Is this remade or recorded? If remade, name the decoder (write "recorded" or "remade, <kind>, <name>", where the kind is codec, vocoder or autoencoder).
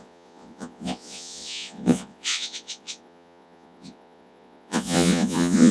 remade, vocoder, Vocos